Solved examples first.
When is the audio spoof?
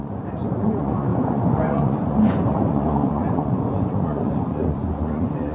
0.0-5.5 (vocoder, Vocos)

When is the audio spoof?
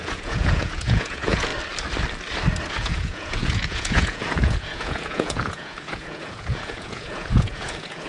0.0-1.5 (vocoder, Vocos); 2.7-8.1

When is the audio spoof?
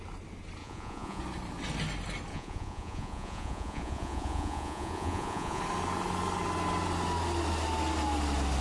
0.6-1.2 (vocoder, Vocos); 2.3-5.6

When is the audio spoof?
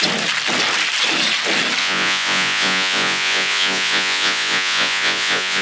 1.8-5.6 (vocoder, Vocos)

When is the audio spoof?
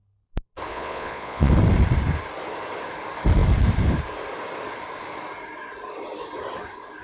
0.7-1.5 (vocoder, Vocos)